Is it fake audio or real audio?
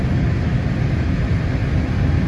real